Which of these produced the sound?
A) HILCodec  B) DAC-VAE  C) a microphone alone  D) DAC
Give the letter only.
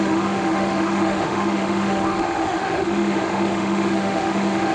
B